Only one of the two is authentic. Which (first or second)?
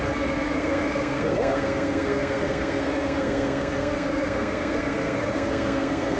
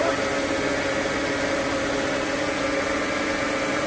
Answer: second